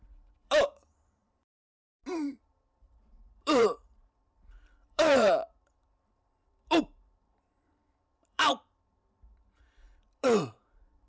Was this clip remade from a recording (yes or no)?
yes